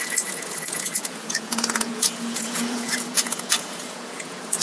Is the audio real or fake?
fake